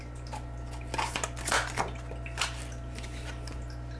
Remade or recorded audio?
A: recorded